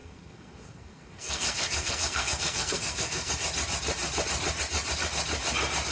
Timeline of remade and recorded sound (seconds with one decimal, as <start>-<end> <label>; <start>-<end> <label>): 0.0-3.3 remade; 3.3-5.9 recorded